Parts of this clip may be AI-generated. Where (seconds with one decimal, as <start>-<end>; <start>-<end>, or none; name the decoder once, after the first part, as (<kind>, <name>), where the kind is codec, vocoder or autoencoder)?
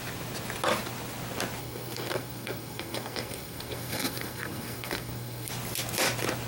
1.6-5.5 (codec, SNAC)